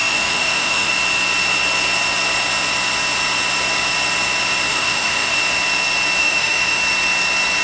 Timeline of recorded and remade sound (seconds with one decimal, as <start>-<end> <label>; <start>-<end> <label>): 0.0-0.9 remade; 0.9-4.7 recorded; 4.7-5.4 remade; 5.4-6.2 recorded; 6.2-6.8 remade; 6.8-7.6 recorded